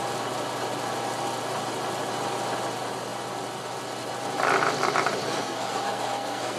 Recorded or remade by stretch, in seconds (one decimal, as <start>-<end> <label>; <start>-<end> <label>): 0.0-5.2 recorded; 5.2-6.6 remade